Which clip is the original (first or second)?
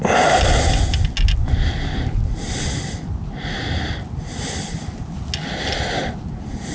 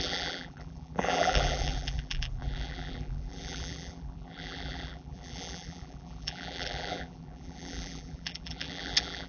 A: first